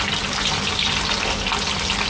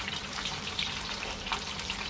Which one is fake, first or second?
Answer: second